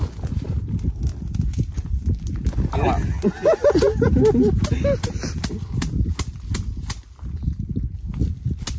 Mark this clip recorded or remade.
recorded